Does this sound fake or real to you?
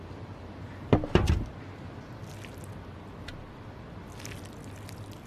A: real